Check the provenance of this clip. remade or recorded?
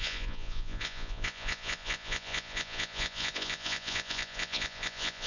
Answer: remade